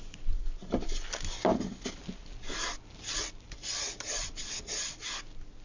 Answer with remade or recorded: recorded